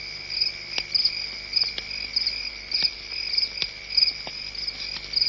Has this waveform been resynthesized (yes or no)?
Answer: no